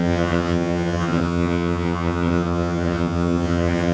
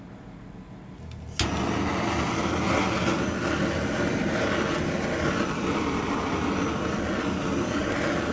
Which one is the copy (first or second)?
first